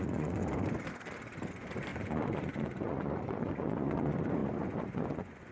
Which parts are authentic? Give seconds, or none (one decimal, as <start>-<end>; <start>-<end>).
0.4-1.5